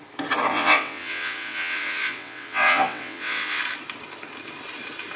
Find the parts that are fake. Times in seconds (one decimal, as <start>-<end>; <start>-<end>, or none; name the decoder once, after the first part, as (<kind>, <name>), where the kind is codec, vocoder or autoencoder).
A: 0.5-3.6 (vocoder, WaveNeXt)